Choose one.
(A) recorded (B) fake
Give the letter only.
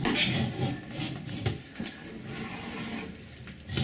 A